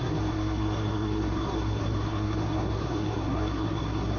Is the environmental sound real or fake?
fake